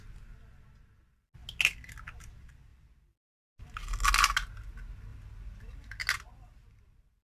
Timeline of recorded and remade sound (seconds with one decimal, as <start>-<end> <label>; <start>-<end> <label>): 0.0-7.3 recorded